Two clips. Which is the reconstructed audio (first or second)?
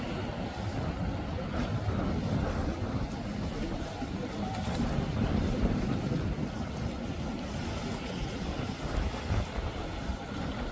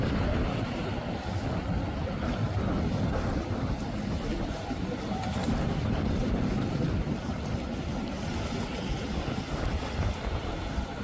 second